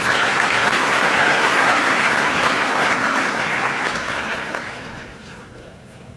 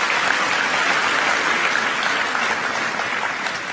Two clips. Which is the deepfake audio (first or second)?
first